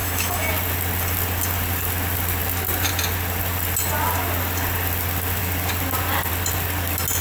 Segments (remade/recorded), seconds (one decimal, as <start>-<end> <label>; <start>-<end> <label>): 0.0-0.5 remade; 0.5-7.2 recorded